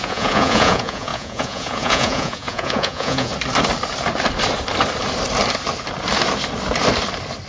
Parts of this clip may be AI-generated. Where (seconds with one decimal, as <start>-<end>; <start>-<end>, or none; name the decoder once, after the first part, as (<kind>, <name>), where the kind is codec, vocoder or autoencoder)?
0.0-3.3 (vocoder, Vocos)